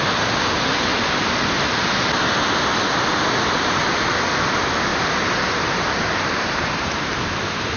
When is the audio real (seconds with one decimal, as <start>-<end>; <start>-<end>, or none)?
0.0-4.9